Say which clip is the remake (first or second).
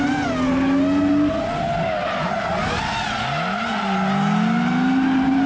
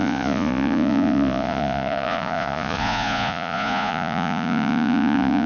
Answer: second